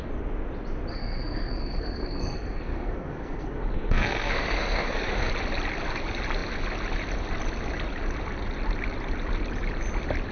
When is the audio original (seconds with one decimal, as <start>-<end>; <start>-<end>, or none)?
0.0-0.9; 5.3-10.3